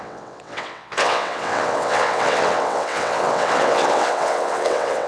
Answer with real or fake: fake